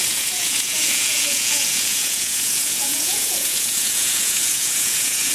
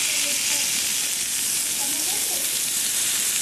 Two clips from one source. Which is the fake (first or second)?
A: first